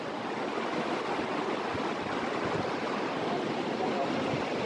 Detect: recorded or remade recorded